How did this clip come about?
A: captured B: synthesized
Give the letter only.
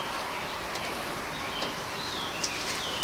A